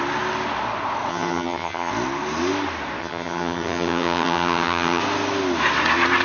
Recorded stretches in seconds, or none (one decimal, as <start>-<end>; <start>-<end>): 0.0-1.1; 1.9-3.0; 5.0-6.2